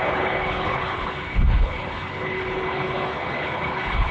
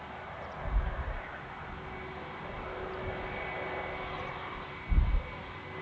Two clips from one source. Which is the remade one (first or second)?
first